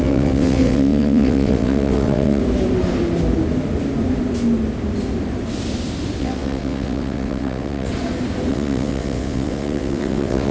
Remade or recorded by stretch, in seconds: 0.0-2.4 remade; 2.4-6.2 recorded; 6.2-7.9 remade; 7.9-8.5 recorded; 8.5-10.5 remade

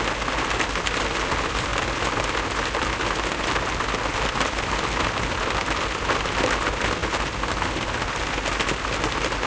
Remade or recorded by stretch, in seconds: 0.0-9.5 recorded

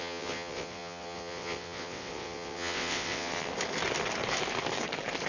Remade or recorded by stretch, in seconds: 0.0-3.5 remade; 3.5-5.3 recorded

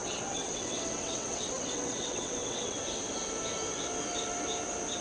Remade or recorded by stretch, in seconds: 0.0-2.8 remade; 2.8-5.0 recorded